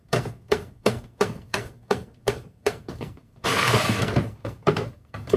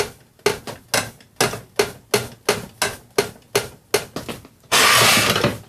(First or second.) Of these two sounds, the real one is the second